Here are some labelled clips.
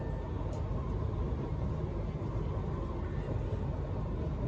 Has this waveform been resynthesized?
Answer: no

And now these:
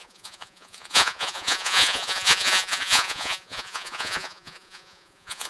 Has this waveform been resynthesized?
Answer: yes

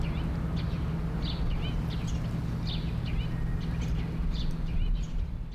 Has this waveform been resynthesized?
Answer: no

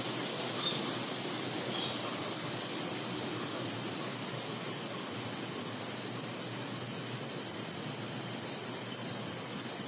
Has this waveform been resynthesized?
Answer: no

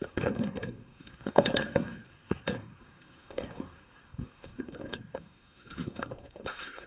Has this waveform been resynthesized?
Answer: yes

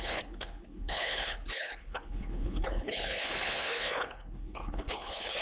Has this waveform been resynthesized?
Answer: yes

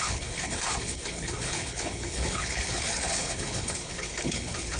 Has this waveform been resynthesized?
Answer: yes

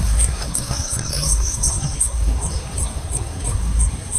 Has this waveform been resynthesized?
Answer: yes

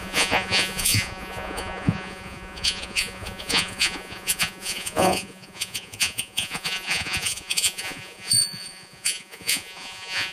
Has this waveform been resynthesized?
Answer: yes